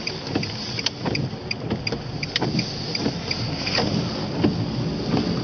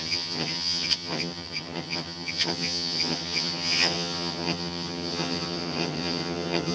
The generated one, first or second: second